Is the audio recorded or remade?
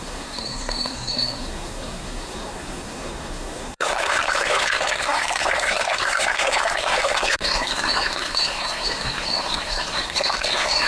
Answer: remade